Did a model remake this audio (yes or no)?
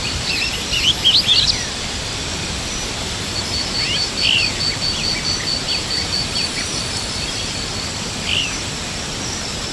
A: yes